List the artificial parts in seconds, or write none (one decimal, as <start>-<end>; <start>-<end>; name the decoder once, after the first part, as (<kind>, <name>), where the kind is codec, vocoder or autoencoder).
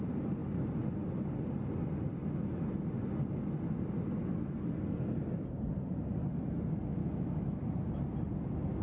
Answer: 7.0-7.6 (autoencoder, DAC-VAE)